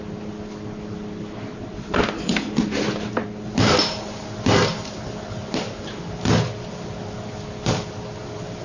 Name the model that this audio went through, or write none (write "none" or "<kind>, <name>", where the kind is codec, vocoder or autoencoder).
none